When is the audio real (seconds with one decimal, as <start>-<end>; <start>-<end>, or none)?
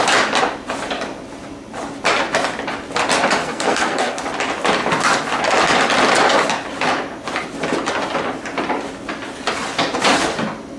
0.0-3.4; 4.2-10.8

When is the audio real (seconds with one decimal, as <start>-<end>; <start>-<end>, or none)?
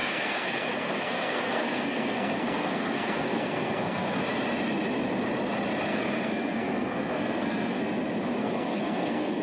4.2-5.9; 7.8-8.4